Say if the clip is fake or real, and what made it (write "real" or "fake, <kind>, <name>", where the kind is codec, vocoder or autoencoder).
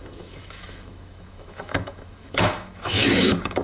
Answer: fake, autoencoder, DAC-VAE